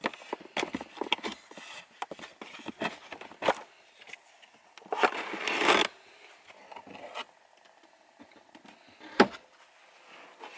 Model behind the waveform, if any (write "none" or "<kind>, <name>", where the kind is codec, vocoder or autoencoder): none